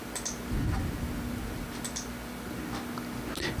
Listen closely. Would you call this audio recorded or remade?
recorded